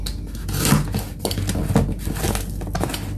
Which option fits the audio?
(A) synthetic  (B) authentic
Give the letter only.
B